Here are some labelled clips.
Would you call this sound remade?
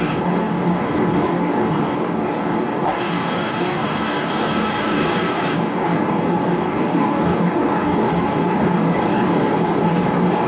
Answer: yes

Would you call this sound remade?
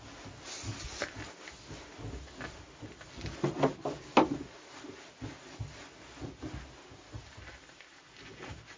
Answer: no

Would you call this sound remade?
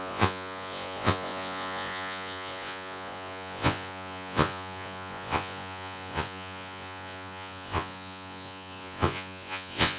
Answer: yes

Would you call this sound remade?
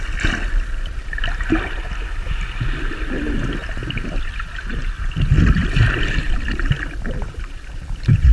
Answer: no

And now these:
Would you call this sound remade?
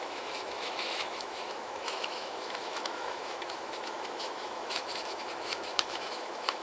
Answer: yes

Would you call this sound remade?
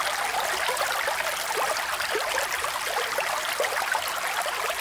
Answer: yes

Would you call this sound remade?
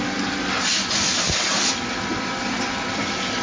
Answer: no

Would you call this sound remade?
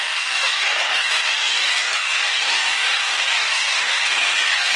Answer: yes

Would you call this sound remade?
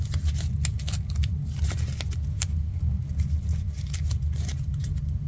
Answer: no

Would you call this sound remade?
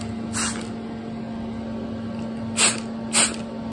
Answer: no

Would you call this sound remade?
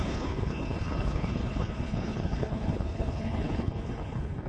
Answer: yes